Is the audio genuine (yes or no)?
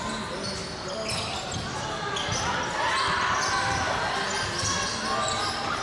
yes